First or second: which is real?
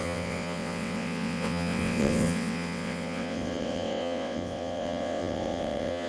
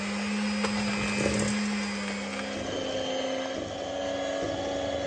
second